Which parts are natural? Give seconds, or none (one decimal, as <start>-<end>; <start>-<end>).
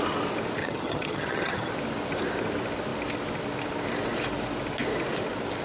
0.0-0.6; 1.7-5.6